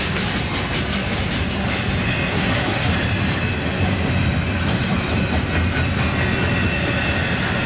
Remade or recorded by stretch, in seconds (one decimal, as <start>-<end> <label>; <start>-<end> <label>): 0.0-2.3 recorded; 2.3-2.9 remade; 2.9-7.7 recorded